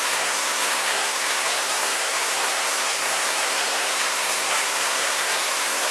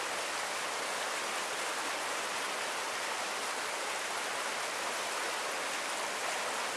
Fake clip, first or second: first